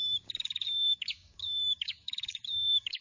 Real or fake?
fake